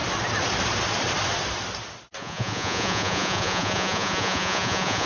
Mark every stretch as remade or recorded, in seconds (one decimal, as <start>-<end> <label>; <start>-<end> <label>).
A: 0.0-2.2 recorded; 2.2-5.1 remade

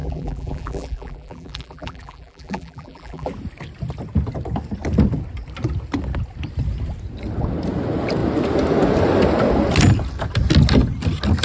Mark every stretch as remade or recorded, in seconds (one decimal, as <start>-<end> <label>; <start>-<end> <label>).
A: 0.0-3.3 remade; 3.3-11.4 recorded

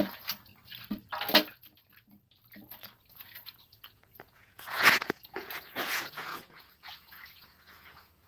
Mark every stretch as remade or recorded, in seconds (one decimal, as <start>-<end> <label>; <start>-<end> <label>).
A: 0.0-0.5 remade; 0.5-3.1 recorded; 3.1-8.3 remade

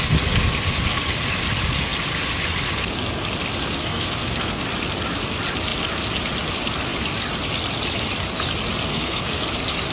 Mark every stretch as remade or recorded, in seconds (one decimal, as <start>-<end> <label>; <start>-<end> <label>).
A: 0.0-3.8 recorded; 3.8-4.6 remade; 4.6-8.9 recorded; 8.9-9.5 remade; 9.5-9.9 recorded

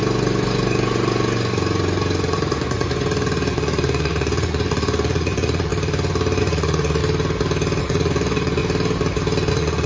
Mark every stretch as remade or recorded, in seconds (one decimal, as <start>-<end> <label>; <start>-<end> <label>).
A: 0.0-5.7 remade; 5.7-6.4 recorded; 6.4-7.0 remade; 7.0-7.8 recorded; 7.8-8.6 remade; 8.6-9.5 recorded; 9.5-9.9 remade

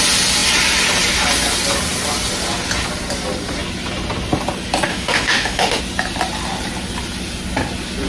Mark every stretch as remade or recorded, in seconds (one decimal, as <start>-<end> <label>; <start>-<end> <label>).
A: 0.0-4.9 recorded; 4.9-5.8 remade; 5.8-8.1 recorded

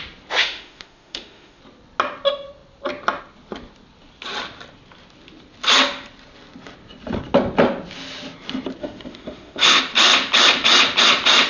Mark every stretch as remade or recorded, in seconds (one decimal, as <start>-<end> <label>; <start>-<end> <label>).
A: 0.0-0.4 recorded; 0.4-1.6 remade; 1.6-8.8 recorded; 8.8-9.8 remade; 9.8-11.5 recorded